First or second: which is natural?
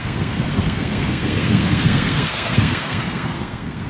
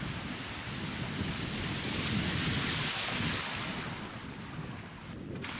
second